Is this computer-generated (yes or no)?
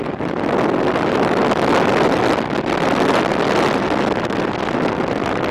no